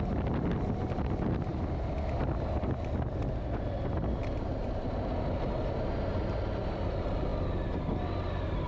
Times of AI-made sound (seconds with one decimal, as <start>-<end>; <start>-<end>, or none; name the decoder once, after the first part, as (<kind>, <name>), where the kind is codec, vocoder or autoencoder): none